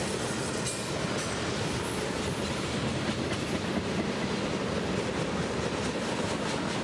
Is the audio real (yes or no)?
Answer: yes